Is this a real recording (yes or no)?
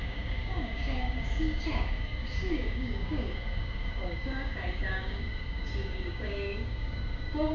no